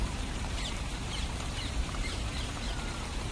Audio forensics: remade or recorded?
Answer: remade